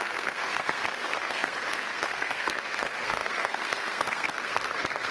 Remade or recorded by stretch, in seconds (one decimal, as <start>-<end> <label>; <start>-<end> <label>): 0.0-5.1 remade